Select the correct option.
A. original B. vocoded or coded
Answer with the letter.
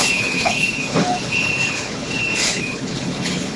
B